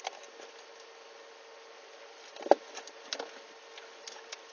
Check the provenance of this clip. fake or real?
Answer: real